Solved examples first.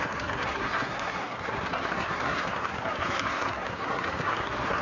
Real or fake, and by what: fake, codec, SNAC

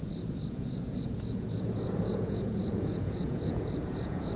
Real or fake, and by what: fake, vocoder, Vocos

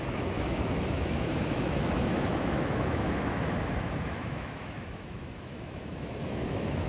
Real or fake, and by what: fake, autoencoder, DAC-VAE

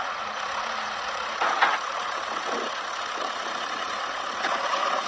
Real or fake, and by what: fake, vocoder, Vocos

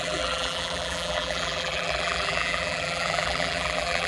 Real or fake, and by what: fake, vocoder, BigVGAN v2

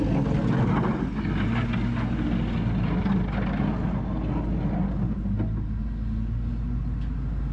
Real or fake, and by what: real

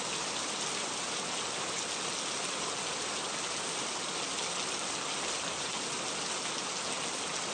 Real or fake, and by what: real